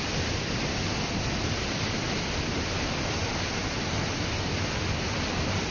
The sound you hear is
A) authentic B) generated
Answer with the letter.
A